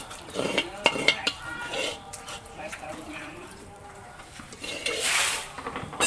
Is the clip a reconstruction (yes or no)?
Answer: yes